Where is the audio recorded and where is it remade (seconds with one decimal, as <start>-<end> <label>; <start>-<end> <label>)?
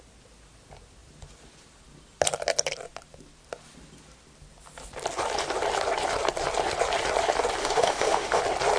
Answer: 0.0-7.6 recorded; 7.6-8.4 remade; 8.4-8.8 recorded